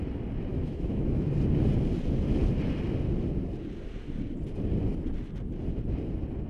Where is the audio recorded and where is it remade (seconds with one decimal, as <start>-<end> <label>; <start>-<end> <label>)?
0.0-0.5 recorded; 0.5-1.3 remade; 1.3-6.5 recorded